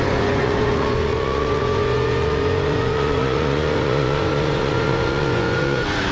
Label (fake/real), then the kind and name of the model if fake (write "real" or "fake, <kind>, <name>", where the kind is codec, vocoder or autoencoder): fake, vocoder, Vocos